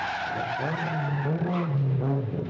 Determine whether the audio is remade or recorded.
remade